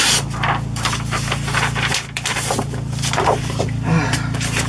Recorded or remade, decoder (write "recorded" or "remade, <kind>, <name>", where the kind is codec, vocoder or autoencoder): remade, vocoder, BigVGAN v2